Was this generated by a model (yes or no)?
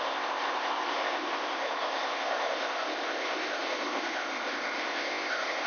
yes